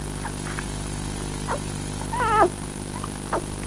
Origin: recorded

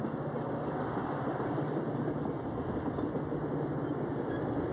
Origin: recorded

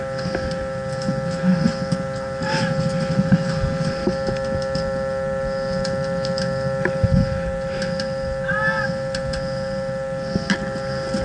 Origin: recorded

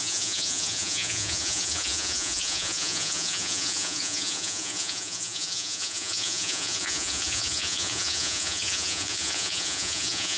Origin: remade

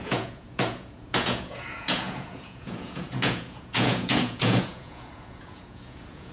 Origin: remade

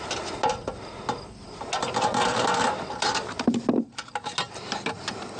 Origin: recorded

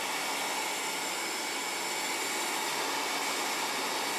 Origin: recorded